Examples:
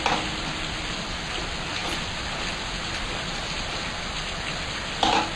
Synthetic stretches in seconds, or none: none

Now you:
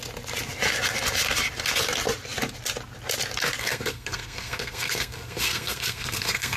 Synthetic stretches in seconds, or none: 3.6-6.6